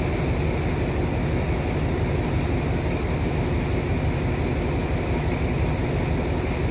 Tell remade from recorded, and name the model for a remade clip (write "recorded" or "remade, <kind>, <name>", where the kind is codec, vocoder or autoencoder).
recorded